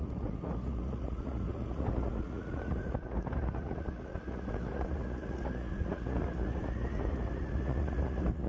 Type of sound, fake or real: fake